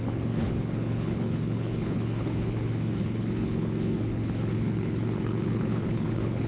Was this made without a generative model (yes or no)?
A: no